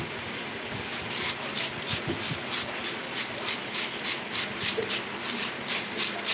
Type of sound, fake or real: fake